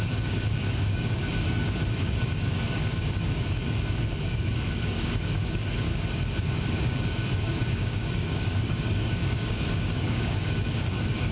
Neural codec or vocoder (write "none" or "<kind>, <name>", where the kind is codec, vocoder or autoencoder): codec, DAC